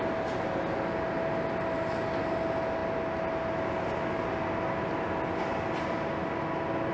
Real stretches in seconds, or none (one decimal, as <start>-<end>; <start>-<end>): 0.0-6.9